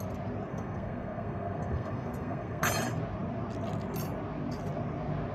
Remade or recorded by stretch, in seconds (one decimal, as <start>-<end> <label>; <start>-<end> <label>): 0.0-0.5 recorded; 0.5-2.6 remade; 2.6-5.3 recorded